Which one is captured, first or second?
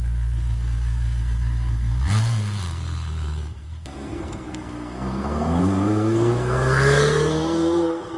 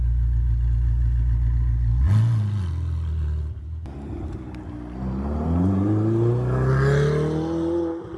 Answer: second